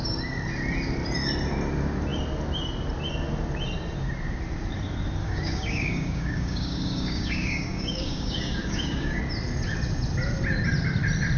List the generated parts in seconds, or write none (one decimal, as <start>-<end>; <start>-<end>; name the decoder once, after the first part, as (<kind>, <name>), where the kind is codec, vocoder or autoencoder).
5.2-9.2 (codec, DAC)